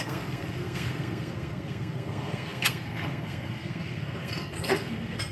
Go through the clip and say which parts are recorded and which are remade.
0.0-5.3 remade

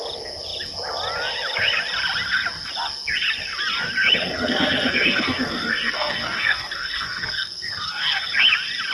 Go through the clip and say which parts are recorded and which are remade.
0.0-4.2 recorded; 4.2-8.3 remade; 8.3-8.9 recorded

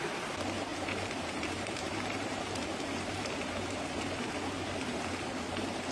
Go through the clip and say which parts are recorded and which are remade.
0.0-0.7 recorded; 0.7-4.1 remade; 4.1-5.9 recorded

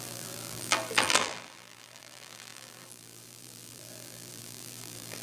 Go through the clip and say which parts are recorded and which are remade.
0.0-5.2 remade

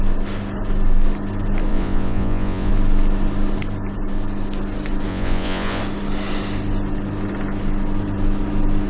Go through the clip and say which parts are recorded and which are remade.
0.0-1.7 recorded; 1.7-2.7 remade; 2.7-5.1 recorded; 5.1-5.8 remade; 5.8-8.9 recorded

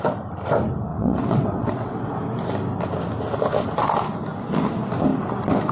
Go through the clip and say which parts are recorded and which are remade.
0.0-0.9 recorded; 0.9-2.2 remade; 2.2-5.7 recorded

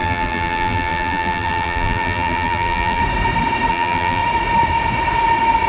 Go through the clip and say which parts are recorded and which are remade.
0.0-3.0 remade; 3.0-3.7 recorded; 3.7-4.2 remade; 4.2-5.7 recorded

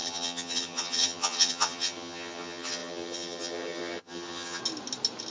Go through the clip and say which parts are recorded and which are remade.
0.0-4.6 remade; 4.6-5.3 recorded